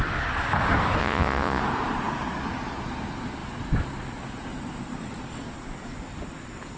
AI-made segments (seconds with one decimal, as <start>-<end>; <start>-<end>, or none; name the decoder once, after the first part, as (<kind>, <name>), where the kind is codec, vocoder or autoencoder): 1.0-1.6 (vocoder, Vocos)